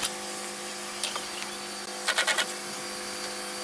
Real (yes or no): yes